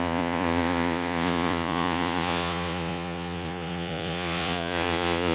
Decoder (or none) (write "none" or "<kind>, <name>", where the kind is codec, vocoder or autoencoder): vocoder, Vocos